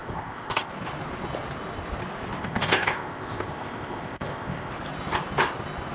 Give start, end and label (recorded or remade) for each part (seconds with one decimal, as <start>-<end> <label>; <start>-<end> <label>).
0.0-0.7 remade; 0.7-2.4 recorded; 2.4-4.7 remade; 4.7-5.9 recorded